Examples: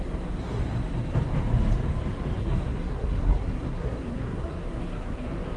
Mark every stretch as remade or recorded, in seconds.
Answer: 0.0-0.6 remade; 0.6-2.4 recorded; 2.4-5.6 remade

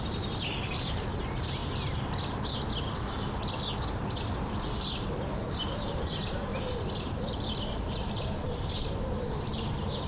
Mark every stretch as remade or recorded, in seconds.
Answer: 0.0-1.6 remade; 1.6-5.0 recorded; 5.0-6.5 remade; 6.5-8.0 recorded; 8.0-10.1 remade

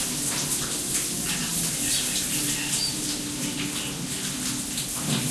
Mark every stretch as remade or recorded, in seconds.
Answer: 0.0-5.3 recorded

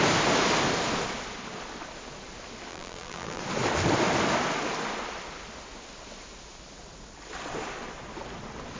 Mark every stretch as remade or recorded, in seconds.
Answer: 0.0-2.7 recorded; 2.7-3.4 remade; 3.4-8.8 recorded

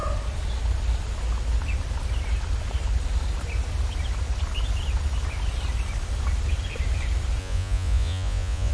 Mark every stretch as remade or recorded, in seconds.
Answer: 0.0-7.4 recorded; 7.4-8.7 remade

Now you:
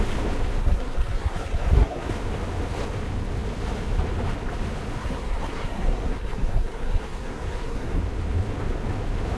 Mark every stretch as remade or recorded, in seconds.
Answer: 0.0-0.6 recorded; 0.6-2.1 remade; 2.1-5.0 recorded; 5.0-8.0 remade; 8.0-9.4 recorded